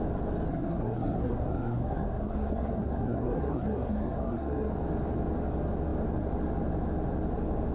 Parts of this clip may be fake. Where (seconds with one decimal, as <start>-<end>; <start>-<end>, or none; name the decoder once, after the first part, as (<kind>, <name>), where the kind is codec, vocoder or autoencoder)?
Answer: 0.5-4.7 (codec, SNAC)